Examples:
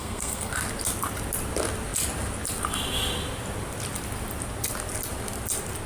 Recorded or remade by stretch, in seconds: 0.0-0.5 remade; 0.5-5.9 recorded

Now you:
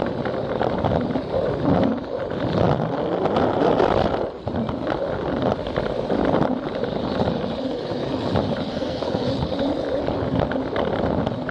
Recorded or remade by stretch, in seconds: 0.0-8.7 recorded; 8.7-9.3 remade; 9.3-11.5 recorded